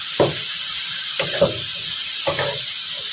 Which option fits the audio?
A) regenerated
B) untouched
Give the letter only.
A